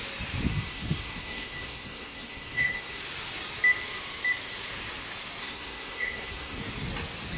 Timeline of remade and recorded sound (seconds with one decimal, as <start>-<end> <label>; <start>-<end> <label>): 0.0-0.5 recorded; 0.5-3.0 remade; 3.0-5.4 recorded; 5.4-6.6 remade; 6.6-7.4 recorded